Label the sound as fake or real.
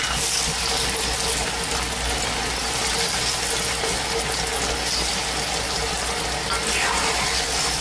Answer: real